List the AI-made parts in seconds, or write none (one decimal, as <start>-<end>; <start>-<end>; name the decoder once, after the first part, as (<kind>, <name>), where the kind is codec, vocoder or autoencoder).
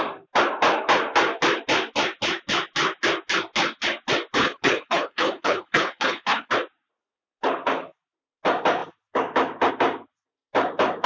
4.4-6.5 (codec, HILCodec)